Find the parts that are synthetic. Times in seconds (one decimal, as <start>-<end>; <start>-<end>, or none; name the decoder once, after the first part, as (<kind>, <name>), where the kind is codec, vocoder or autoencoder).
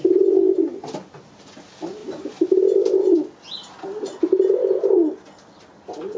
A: none